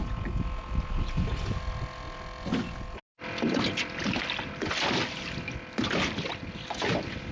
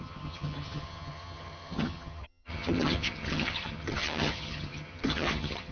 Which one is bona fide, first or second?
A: first